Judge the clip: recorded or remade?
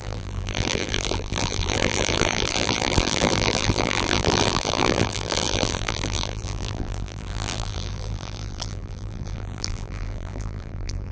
remade